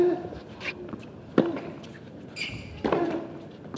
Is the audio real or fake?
real